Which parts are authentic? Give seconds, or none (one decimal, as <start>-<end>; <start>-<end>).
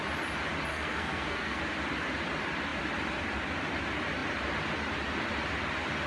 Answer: 0.0-0.7; 1.6-6.1